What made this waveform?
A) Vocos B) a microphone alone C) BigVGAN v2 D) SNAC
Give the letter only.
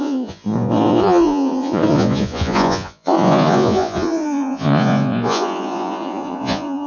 A